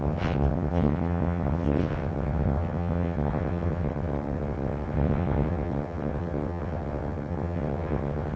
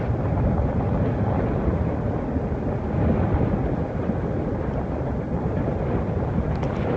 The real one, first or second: second